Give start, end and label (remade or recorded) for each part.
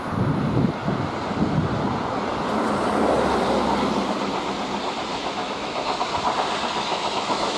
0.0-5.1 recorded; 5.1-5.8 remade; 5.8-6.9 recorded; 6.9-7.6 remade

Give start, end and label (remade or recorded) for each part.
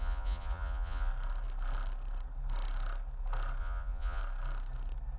0.0-1.1 remade; 1.1-3.6 recorded; 3.6-4.2 remade; 4.2-5.2 recorded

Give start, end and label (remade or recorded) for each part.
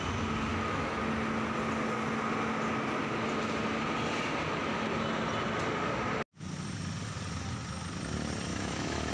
0.0-0.5 recorded; 0.5-1.0 remade; 1.0-8.5 recorded; 8.5-9.1 remade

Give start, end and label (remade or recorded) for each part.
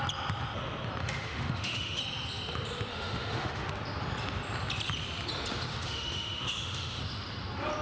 0.0-1.0 recorded; 1.0-2.0 remade; 2.0-2.9 recorded; 2.9-3.7 remade; 3.7-5.7 recorded; 5.7-7.0 remade; 7.0-7.8 recorded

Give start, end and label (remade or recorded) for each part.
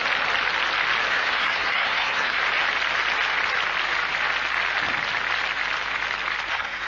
0.0-1.1 recorded; 1.1-2.4 remade; 2.4-6.5 recorded; 6.5-6.9 remade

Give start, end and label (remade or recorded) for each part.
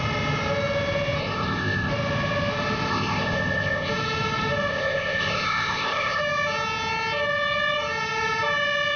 0.0-1.2 recorded; 1.2-1.9 remade; 1.9-2.9 recorded; 2.9-3.9 remade; 3.9-4.7 recorded; 4.7-6.2 remade; 6.2-9.0 recorded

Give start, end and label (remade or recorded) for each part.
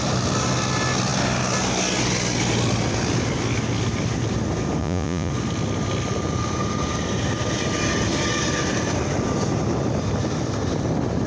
0.0-4.8 recorded; 4.8-5.3 remade; 5.3-11.3 recorded